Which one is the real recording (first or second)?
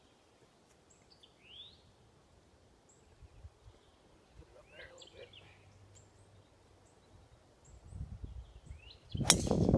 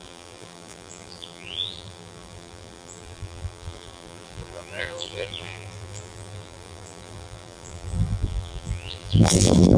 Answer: first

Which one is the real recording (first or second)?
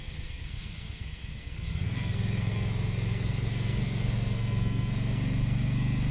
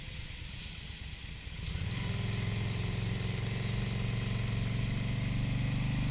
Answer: second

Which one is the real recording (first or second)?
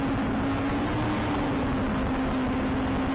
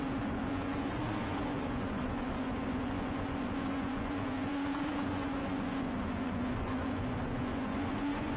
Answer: first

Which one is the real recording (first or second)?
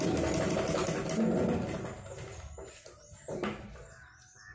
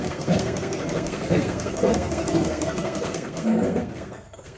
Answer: first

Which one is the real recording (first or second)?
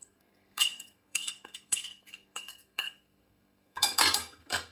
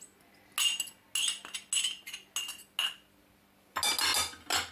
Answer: second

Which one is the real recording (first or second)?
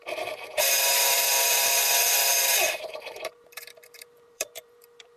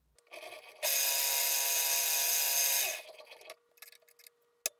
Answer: second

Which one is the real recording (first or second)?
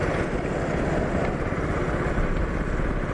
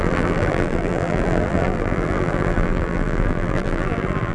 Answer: first